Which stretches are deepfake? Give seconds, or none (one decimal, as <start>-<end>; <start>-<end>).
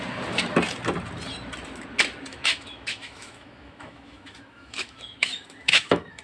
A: 2.3-6.2